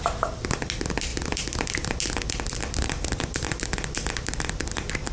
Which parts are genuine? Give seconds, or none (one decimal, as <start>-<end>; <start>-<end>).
0.0-5.1

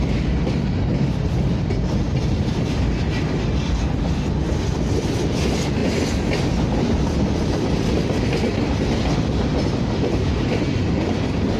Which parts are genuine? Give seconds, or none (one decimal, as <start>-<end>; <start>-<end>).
0.0-5.8; 7.9-9.5; 10.2-11.6